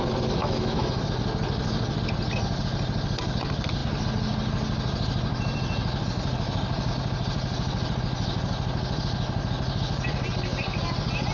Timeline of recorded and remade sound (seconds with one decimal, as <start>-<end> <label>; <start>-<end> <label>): 0.0-0.4 recorded; 0.4-1.0 remade; 1.0-11.3 recorded